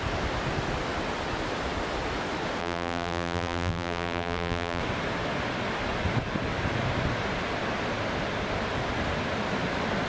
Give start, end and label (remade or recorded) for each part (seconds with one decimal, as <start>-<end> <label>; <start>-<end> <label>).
0.0-2.6 recorded; 2.6-4.8 remade; 4.8-10.1 recorded